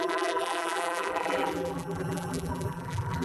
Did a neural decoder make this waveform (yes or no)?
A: yes